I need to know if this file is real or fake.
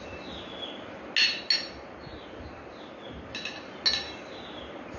real